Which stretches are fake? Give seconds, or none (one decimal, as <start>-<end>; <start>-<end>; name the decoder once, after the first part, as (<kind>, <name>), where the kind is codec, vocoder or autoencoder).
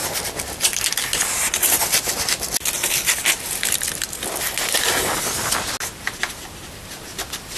none